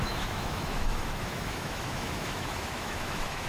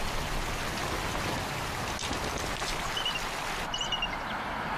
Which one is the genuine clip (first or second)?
second